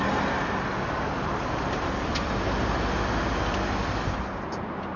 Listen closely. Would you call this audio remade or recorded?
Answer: recorded